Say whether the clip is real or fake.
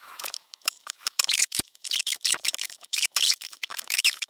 fake